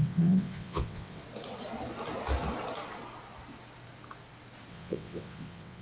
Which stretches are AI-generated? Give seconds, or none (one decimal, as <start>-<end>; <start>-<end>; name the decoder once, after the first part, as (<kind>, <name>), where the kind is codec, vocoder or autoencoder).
0.0-1.2 (vocoder, WaveNeXt); 4.7-5.8